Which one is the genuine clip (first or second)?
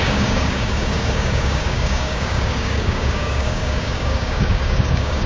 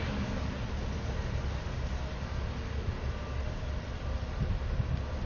second